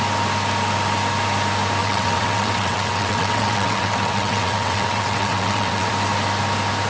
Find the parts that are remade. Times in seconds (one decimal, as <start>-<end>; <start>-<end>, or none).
1.8-5.9